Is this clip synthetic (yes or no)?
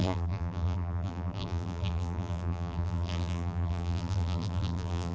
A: yes